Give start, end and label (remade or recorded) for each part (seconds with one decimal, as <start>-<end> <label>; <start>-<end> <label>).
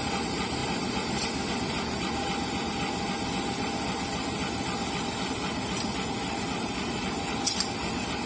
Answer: 0.0-0.6 remade; 0.6-5.3 recorded; 5.3-8.3 remade